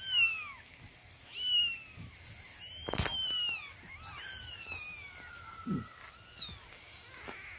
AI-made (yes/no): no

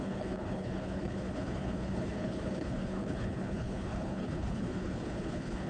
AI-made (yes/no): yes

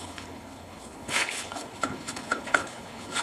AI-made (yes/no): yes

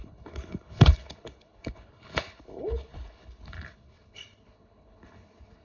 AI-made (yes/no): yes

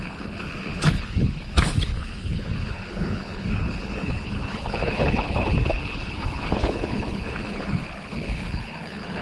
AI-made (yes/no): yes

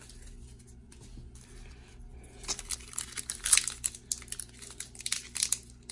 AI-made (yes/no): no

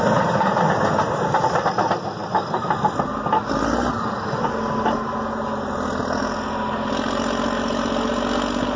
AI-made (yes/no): no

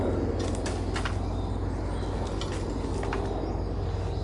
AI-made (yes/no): no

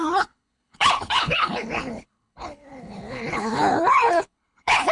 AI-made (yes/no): yes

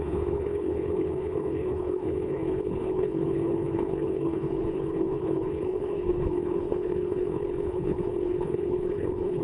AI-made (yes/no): yes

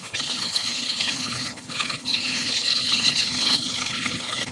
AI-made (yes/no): yes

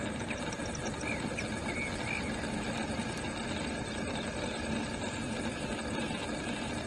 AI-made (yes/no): no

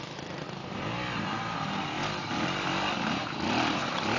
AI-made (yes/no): no